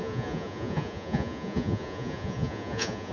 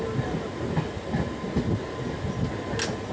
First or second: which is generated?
first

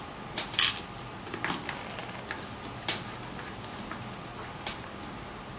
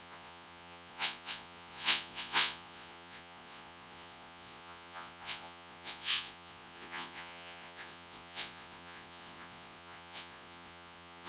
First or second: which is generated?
second